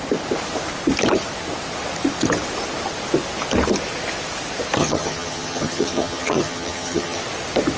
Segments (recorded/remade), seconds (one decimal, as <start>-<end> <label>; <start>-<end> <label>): 0.0-4.8 recorded; 4.8-7.2 remade; 7.2-7.8 recorded